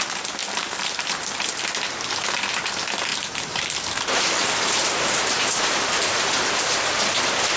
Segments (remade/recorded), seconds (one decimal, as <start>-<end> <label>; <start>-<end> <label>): 0.0-0.4 recorded; 0.4-1.7 remade; 1.7-3.1 recorded; 3.1-6.2 remade; 6.2-7.6 recorded